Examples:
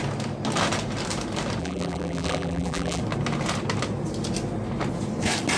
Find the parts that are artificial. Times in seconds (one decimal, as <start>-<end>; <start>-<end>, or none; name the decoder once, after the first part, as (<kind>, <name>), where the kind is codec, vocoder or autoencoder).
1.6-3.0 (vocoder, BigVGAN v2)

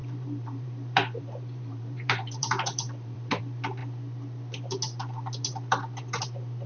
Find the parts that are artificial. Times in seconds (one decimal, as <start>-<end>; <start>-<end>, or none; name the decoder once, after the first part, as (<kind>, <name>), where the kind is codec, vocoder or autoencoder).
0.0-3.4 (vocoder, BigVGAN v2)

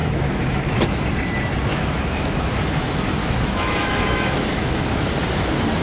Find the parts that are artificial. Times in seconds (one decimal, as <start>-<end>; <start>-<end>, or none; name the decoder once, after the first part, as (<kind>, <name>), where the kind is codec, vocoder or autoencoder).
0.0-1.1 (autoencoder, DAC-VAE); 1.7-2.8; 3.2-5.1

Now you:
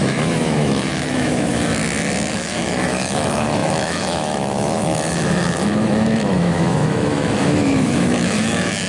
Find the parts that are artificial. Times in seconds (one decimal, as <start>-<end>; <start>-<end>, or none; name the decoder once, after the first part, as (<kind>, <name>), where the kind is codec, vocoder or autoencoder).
0.0-1.8 (autoencoder, DAC-VAE); 2.3-8.9